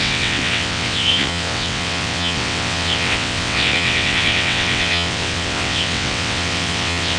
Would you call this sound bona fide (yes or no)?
no